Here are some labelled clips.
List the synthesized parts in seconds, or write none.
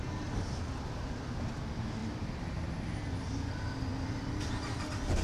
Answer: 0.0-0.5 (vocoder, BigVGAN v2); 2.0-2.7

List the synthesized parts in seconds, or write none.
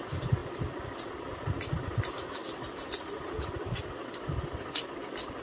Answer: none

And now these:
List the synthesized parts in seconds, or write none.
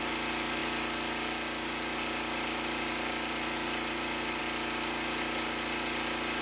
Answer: none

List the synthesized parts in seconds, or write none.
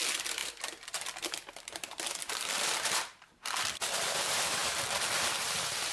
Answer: 0.0-4.6 (vocoder, BigVGAN v2); 5.4-5.9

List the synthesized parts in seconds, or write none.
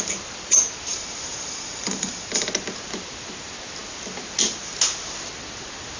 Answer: 0.9-2.5 (vocoder, BigVGAN v2)